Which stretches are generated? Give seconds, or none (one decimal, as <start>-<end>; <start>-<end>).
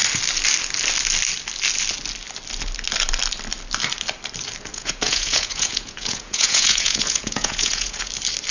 4.7-8.1